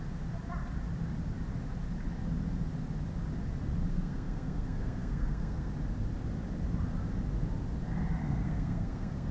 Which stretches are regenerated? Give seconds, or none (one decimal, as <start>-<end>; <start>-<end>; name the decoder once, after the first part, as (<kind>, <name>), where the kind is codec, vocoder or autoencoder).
3.9-5.7 (codec, SNAC); 8.2-9.3